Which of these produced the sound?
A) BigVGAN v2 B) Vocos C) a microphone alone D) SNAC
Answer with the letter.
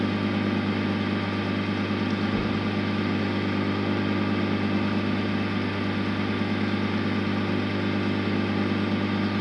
C